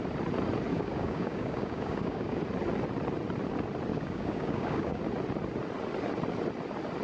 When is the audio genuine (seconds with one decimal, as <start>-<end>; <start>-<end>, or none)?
0.0-0.7; 2.4-3.9; 5.0-7.0